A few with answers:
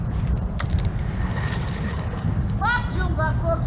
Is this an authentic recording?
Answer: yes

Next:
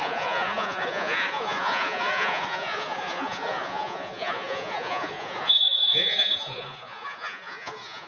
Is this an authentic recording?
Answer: no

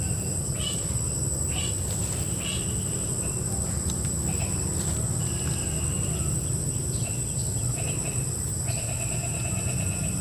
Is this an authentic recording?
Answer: yes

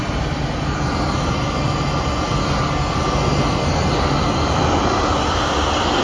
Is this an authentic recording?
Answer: yes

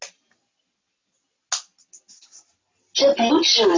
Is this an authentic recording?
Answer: yes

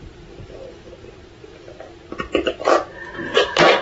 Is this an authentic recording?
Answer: yes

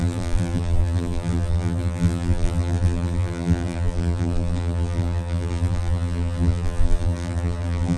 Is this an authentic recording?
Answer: no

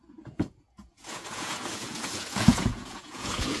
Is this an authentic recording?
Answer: no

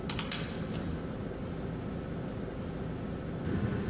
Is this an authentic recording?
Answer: yes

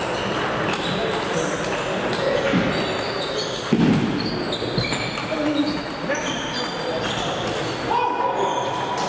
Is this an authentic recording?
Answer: yes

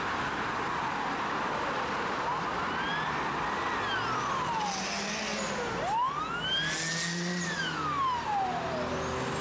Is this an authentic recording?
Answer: yes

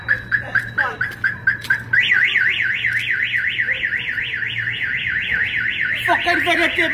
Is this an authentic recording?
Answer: yes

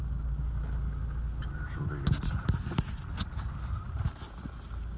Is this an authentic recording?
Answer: yes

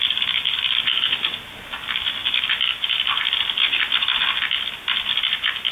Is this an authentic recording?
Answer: yes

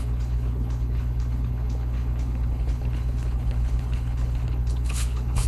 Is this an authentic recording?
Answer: no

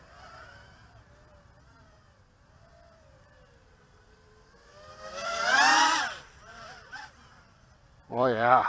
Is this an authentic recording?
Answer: no